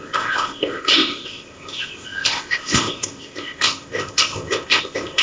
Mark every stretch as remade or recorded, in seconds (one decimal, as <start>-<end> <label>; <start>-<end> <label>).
0.0-5.2 remade